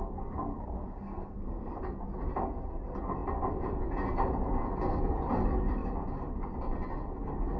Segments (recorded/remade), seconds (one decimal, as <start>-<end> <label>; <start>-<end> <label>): 0.0-0.5 recorded; 0.5-1.8 remade; 1.8-7.6 recorded